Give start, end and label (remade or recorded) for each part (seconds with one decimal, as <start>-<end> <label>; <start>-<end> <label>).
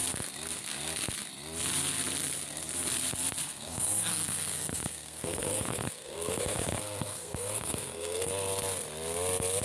0.0-3.5 recorded; 3.5-8.3 remade; 8.3-9.6 recorded